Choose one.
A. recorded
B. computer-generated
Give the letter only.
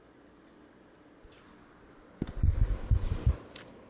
A